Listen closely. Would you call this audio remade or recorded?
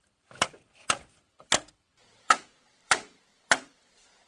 recorded